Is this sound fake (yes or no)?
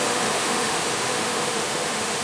yes